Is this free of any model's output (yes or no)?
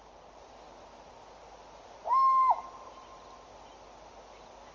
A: yes